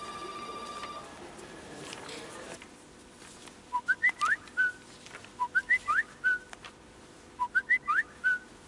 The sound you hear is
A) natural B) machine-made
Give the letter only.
A